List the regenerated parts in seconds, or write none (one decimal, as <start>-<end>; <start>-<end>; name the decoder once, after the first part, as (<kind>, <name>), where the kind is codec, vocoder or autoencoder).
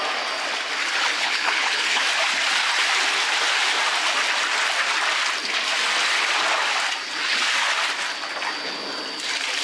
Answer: 1.1-2.0 (codec, HILCodec)